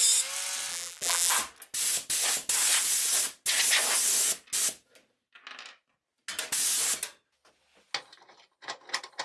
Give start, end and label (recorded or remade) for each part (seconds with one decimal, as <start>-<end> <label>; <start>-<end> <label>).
0.0-0.7 recorded; 0.7-1.3 remade; 1.3-9.2 recorded